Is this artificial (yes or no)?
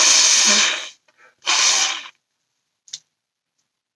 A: no